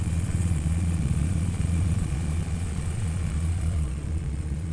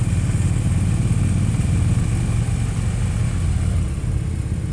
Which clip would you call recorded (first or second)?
second